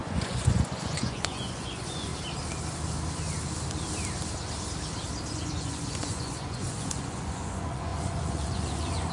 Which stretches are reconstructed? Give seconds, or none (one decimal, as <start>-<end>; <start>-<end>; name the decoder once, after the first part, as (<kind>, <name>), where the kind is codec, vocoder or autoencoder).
0.0-2.1 (vocoder, Vocos); 5.3-9.1